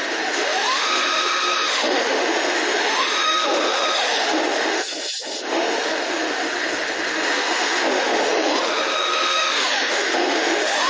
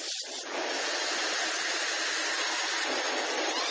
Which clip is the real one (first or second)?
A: second